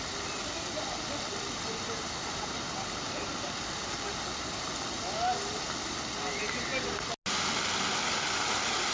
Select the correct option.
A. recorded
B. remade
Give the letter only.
A